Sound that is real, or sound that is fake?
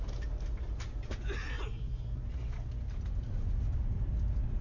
real